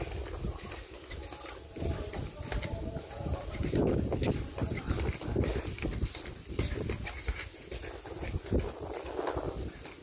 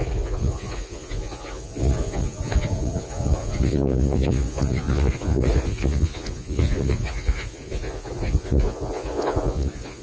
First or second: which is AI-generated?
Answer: second